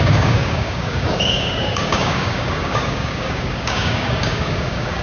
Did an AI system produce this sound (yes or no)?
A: yes